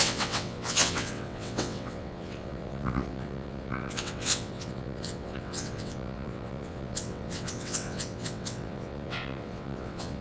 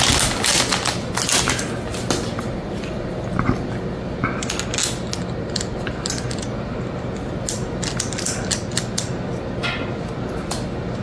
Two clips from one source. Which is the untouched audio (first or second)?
second